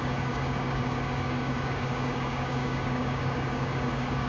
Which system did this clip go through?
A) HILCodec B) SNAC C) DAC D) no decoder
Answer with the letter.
C